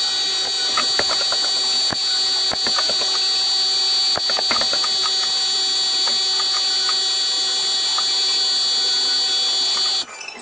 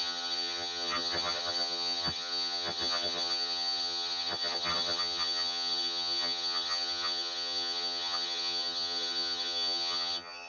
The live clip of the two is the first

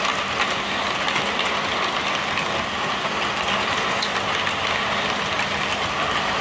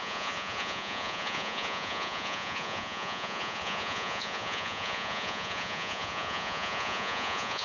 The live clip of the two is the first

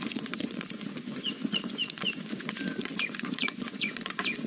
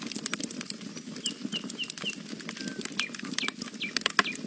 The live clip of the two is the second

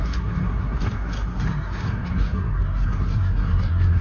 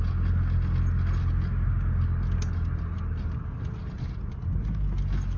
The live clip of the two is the second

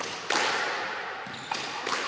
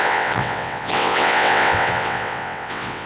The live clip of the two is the first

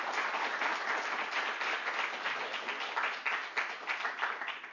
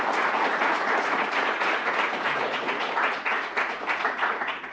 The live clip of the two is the first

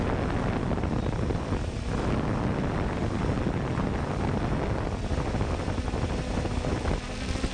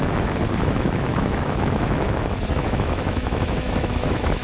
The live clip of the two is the first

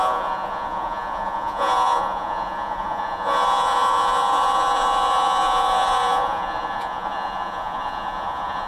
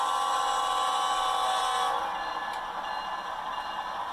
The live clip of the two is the second